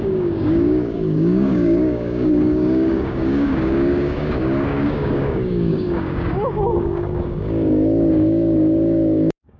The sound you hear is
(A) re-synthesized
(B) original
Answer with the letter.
A